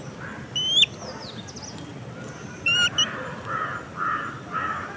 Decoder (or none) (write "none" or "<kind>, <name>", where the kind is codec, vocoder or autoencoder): none